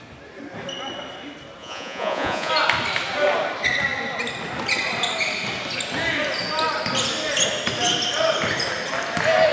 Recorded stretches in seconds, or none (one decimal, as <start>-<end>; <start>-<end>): 0.0-1.6; 2.5-9.5